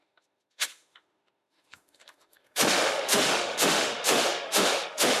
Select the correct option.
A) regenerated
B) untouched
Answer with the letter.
A